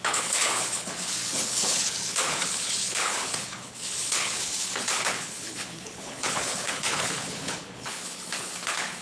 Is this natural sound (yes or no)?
no